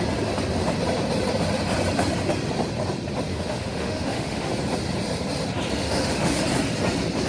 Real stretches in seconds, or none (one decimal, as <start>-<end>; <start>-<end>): 0.0-3.3; 4.5-5.8; 6.4-7.3